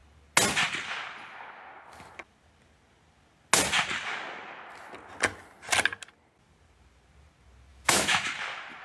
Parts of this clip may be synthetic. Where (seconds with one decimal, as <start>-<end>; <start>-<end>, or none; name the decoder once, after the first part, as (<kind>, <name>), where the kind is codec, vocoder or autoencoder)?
7.7-8.3 (autoencoder, DAC-VAE)